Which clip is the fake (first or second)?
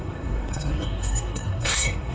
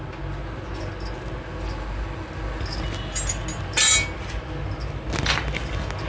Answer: first